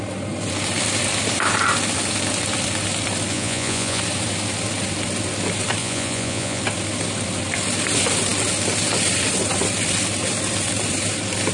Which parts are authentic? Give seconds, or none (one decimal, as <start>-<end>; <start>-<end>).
0.0-3.3; 4.0-5.8; 6.6-11.5